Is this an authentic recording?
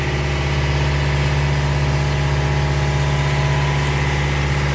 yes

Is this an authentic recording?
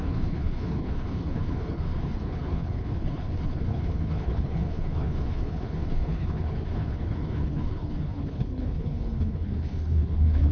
no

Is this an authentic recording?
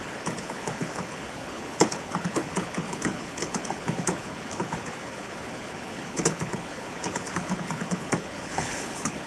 no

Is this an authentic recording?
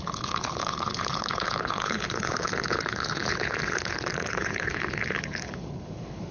no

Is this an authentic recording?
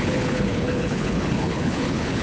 no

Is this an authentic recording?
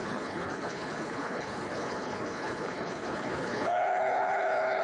no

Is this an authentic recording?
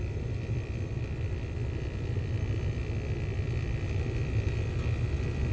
yes